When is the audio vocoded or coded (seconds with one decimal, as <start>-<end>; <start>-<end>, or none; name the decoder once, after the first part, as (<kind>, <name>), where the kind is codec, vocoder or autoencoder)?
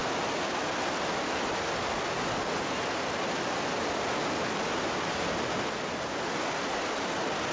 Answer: none